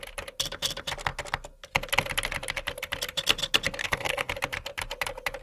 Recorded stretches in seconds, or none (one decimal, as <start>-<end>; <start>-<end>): 0.0-3.8; 4.3-5.4